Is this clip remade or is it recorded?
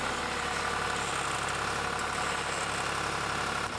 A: recorded